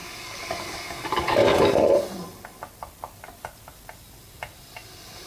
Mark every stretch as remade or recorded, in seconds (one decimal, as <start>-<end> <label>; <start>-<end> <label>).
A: 0.0-1.9 remade; 1.9-5.3 recorded

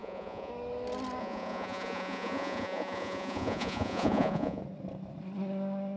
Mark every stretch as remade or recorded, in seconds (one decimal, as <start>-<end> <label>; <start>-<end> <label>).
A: 0.0-0.5 remade; 0.5-1.2 recorded; 1.2-4.6 remade; 4.6-6.0 recorded

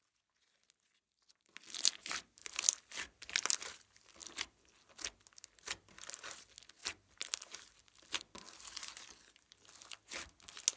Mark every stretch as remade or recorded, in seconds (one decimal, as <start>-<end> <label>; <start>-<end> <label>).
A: 0.0-2.4 recorded; 2.4-3.6 remade; 3.6-6.8 recorded; 6.8-9.7 remade; 9.7-10.8 recorded

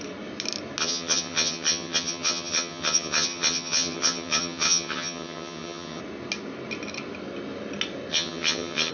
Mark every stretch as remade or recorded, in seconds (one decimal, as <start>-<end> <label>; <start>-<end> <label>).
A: 0.0-0.8 recorded; 0.8-6.0 remade; 6.0-8.1 recorded; 8.1-8.9 remade

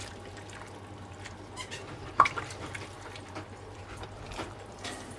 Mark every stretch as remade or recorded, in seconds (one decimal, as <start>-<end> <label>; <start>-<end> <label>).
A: 0.0-5.2 remade